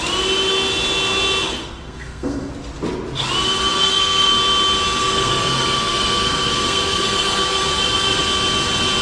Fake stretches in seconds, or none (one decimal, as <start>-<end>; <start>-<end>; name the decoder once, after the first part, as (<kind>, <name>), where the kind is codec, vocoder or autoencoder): 1.6-2.5 (codec, SNAC); 3.7-4.3; 5.0-8.2

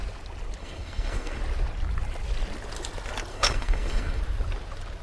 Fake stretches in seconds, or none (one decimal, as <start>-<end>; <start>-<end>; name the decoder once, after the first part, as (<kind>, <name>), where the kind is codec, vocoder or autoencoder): 0.6-1.4 (codec, SNAC); 3.3-4.2

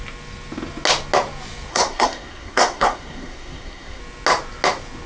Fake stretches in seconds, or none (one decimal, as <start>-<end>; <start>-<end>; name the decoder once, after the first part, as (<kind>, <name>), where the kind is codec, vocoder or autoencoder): 1.7-4.0 (codec, SNAC)

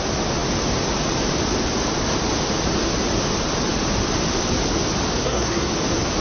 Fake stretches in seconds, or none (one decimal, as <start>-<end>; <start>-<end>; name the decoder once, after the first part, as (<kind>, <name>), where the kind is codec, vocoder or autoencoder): 5.2-5.7 (codec, SNAC)

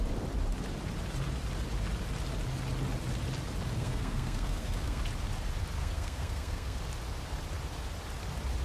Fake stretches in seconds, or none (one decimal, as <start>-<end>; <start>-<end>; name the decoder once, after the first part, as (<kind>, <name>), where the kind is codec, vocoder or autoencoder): 3.8-5.0 (codec, SNAC); 5.8-6.8

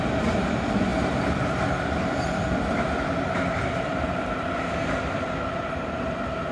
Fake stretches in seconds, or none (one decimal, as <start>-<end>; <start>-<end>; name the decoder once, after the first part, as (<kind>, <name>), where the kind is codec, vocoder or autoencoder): none

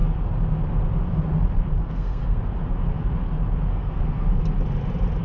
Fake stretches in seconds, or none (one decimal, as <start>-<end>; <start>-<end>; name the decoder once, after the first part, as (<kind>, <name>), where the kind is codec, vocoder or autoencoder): 1.8-2.4 (codec, SNAC); 3.7-4.4